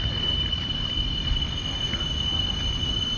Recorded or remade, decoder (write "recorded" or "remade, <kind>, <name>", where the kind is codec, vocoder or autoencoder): recorded